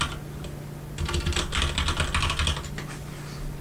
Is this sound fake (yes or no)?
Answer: no